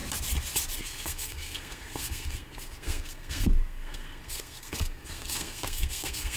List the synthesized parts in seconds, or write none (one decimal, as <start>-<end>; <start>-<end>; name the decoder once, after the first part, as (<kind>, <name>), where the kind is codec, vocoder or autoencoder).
0.8-6.4 (codec, SNAC)